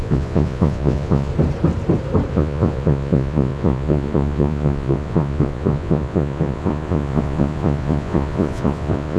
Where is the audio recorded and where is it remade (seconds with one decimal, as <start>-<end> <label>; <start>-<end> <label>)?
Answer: 0.0-1.3 remade; 1.3-2.3 recorded; 2.3-9.2 remade